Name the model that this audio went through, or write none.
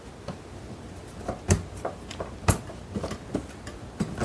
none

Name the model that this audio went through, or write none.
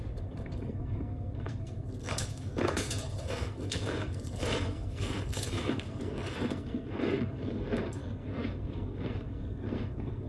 codec, SNAC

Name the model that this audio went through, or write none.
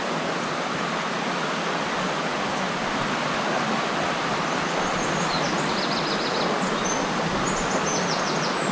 none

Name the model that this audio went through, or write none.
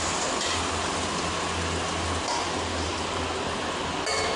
none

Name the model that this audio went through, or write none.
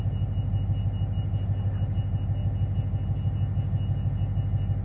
none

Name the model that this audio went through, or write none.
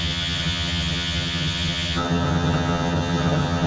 vocoder, HiFi-GAN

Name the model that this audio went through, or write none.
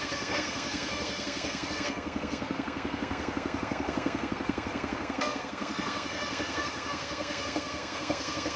codec, SNAC